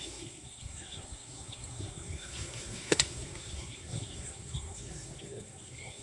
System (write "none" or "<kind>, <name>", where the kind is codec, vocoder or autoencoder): codec, SNAC